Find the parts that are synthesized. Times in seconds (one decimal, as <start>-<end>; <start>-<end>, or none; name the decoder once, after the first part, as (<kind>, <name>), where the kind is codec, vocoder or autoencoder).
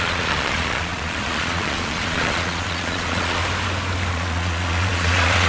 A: 0.0-3.4 (vocoder, Vocos); 4.1-5.5